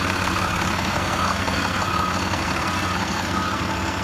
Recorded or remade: remade